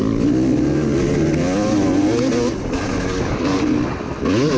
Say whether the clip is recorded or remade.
recorded